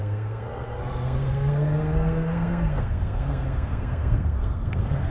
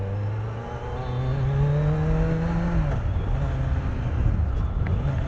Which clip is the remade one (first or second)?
first